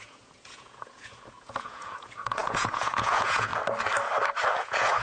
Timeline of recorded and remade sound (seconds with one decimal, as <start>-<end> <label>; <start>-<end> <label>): 0.0-3.5 remade; 3.5-4.6 recorded; 4.6-5.0 remade